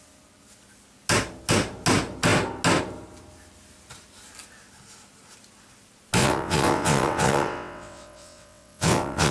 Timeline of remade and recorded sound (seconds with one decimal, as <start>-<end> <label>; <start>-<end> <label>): 0.0-6.2 recorded; 6.2-9.3 remade